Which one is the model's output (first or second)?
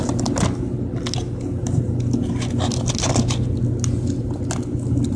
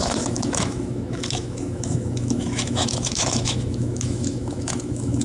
second